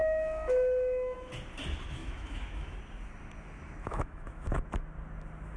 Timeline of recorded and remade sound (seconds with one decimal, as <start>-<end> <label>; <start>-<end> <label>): 0.0-1.3 remade; 1.3-2.0 recorded; 2.0-2.8 remade; 2.8-3.8 recorded; 3.8-4.6 remade; 4.6-5.6 recorded